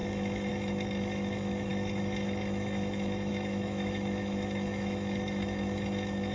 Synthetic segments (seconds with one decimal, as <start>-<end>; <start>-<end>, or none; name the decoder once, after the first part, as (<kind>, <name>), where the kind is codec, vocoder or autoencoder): 0.0-6.3 (autoencoder, DAC-VAE)